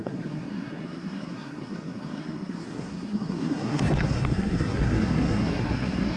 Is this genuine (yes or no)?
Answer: no